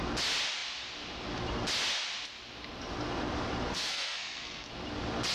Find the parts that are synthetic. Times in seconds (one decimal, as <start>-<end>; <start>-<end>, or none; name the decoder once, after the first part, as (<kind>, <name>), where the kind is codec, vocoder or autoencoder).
3.7-4.7 (codec, SNAC)